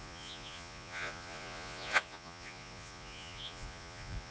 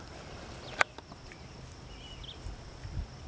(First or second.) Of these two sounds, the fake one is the first